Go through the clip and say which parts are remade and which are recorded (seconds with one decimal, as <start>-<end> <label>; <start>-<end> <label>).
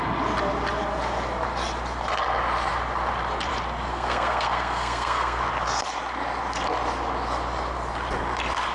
0.0-3.9 recorded; 3.9-5.4 remade; 5.4-8.7 recorded